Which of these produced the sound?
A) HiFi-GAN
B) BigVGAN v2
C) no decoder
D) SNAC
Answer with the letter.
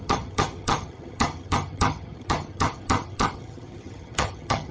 A